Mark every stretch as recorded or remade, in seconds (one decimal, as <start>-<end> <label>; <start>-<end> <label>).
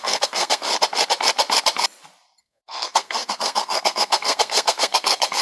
0.0-0.7 remade; 0.7-2.4 recorded; 2.4-5.4 remade